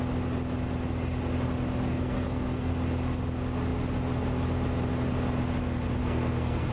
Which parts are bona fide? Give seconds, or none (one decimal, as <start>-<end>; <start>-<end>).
0.0-1.9; 2.7-6.0